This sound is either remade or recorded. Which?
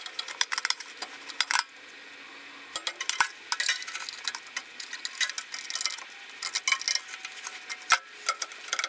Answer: recorded